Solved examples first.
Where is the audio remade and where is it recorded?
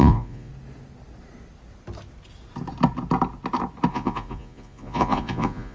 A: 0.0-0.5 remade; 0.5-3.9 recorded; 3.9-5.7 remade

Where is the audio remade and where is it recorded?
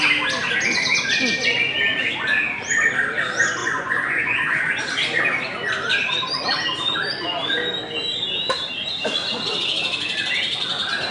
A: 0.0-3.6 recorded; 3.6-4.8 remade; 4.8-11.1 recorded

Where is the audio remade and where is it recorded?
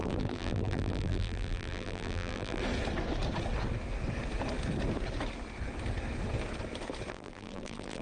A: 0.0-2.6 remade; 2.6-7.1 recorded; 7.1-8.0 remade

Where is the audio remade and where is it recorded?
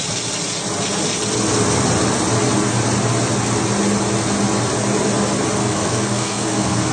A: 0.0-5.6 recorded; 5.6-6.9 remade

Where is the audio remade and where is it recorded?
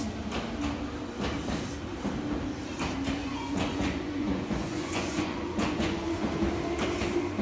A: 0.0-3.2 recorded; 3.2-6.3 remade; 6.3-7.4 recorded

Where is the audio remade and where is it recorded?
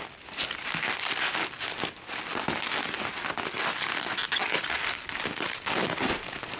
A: 0.0-6.6 recorded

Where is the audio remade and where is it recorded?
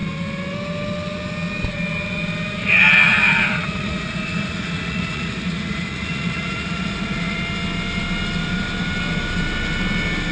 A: 0.0-2.6 recorded; 2.6-7.4 remade; 7.4-10.3 recorded